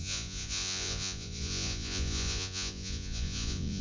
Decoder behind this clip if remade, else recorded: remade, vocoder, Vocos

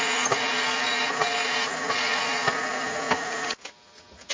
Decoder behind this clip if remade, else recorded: recorded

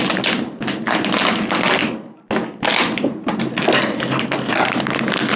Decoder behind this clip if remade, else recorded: recorded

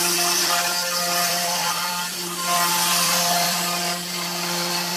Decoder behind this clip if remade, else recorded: remade, vocoder, BigVGAN v2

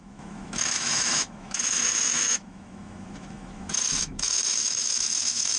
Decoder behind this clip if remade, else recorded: remade, autoencoder, DAC-VAE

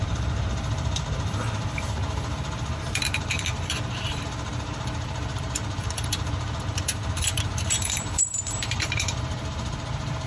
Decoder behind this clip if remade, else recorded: remade, vocoder, BigVGAN v2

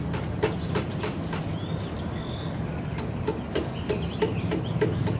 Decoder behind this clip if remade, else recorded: recorded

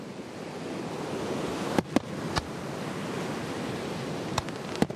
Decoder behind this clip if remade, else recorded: recorded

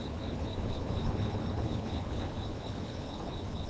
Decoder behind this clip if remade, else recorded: remade, codec, HILCodec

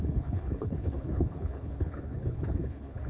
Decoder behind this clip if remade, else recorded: remade, codec, HILCodec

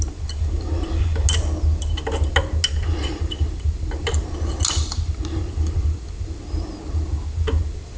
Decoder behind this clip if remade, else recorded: recorded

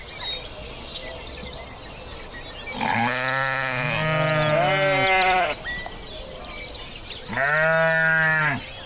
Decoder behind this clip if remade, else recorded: recorded